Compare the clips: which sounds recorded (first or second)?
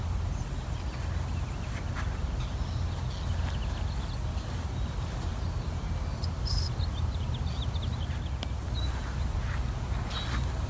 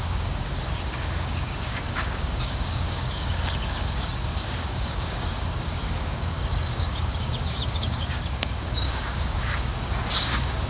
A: first